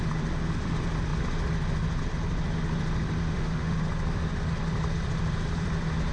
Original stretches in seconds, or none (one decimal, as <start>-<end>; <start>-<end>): 0.0-3.2; 3.8-6.1